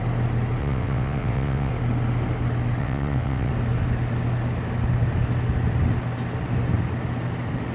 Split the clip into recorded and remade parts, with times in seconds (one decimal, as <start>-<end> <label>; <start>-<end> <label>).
0.0-0.6 recorded; 0.6-1.7 remade; 1.7-2.8 recorded; 2.8-3.5 remade; 3.5-7.7 recorded